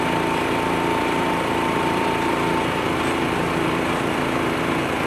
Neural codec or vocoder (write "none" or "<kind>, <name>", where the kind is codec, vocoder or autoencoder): vocoder, BigVGAN v2